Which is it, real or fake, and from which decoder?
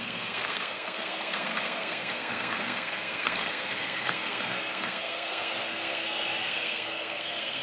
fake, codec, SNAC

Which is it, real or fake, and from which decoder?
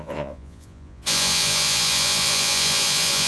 fake, vocoder, Vocos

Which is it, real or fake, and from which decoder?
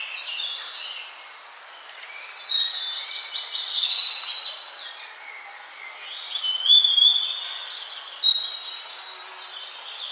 real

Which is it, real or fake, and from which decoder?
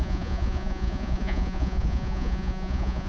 fake, vocoder, Vocos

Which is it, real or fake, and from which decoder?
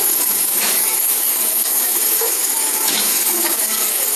fake, codec, DAC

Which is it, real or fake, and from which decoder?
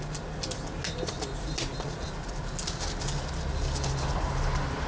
real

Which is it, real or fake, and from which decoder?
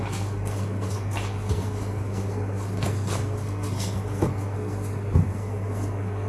fake, codec, SNAC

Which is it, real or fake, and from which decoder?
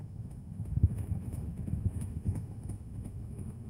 fake, autoencoder, DAC-VAE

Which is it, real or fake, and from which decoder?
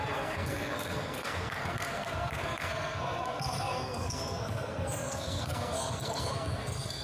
fake, codec, SNAC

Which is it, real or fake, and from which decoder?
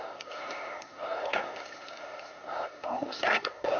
fake, codec, SNAC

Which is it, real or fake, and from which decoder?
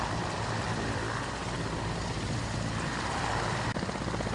real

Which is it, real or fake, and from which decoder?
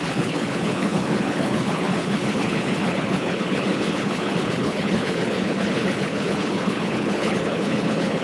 fake, codec, HILCodec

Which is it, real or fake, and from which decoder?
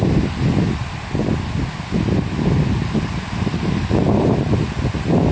real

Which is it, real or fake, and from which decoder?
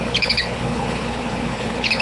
fake, codec, HILCodec